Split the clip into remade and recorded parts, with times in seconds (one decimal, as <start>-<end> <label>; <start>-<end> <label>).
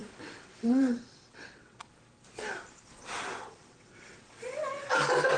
0.0-1.9 remade; 1.9-3.3 recorded; 3.3-4.9 remade; 4.9-5.4 recorded